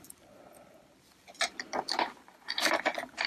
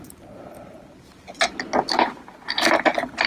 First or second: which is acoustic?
second